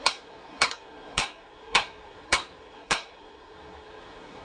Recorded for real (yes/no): no